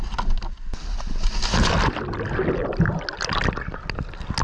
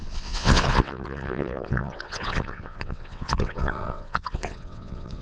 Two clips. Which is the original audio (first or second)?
first